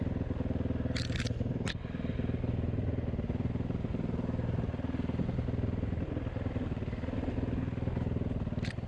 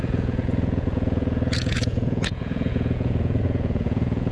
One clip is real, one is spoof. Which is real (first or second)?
first